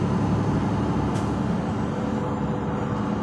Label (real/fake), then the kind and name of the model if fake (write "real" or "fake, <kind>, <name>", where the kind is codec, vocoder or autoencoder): real